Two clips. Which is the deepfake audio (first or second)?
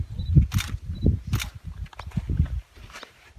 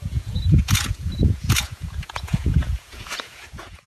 second